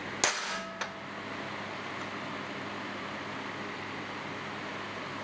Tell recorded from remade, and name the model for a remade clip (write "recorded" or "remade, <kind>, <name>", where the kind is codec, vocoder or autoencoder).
recorded